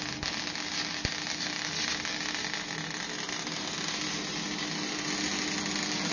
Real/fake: real